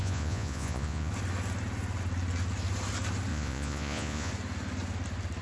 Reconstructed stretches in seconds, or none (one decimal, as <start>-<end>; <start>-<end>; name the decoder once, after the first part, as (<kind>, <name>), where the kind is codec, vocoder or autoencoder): 0.0-1.1 (vocoder, Vocos); 3.3-4.3